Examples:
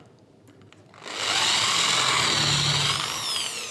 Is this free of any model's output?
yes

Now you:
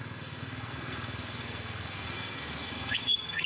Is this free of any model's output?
no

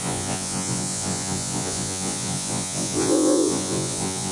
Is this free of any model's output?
no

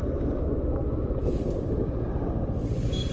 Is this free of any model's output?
yes